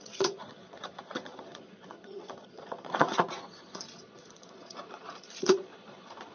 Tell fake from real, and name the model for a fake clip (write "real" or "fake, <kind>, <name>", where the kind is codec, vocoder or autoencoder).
fake, vocoder, Vocos